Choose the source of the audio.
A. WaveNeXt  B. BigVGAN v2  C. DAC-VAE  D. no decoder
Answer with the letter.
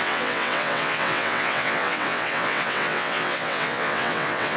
A